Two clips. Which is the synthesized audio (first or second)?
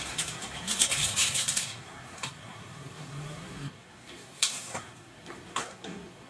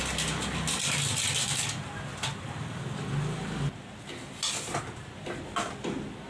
first